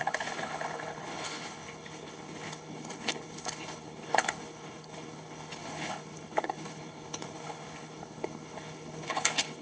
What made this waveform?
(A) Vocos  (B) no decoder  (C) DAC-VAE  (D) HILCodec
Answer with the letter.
D